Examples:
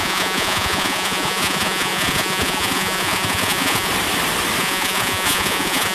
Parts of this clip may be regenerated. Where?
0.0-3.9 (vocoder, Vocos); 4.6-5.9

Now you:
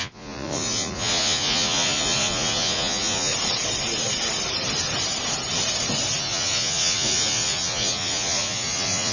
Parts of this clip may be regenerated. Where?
0.0-3.3 (vocoder, Vocos); 6.2-9.1

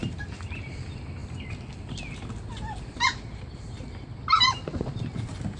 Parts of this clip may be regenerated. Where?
none

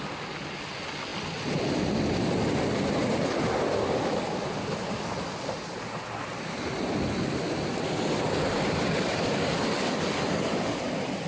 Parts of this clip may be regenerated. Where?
none

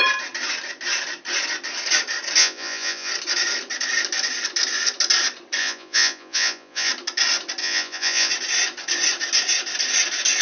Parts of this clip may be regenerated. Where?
2.4-3.1 (vocoder, Vocos); 5.6-6.9; 7.6-8.3

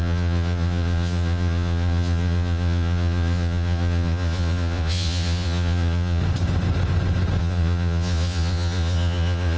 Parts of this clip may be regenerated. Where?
0.0-6.2 (vocoder, Vocos); 7.4-9.6

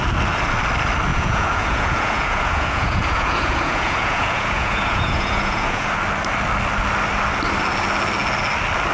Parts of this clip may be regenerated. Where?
1.1-5.9 (vocoder, Vocos)